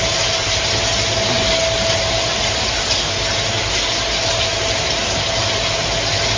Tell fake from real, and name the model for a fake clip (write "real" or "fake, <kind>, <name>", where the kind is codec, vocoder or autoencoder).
real